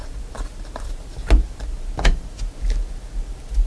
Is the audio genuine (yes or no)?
yes